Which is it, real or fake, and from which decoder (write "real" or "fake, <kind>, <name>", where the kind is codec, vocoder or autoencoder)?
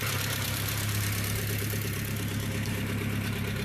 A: fake, vocoder, BigVGAN v2